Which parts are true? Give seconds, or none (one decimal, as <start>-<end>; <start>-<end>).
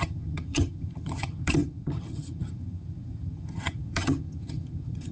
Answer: none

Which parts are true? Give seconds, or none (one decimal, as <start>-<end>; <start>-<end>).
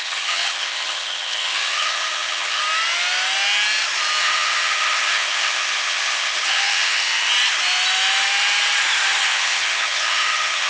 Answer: 2.6-4.2; 7.3-9.2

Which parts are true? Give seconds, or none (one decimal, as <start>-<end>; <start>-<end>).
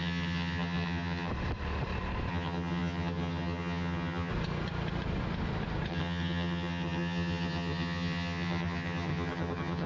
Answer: 1.3-2.3; 4.3-5.9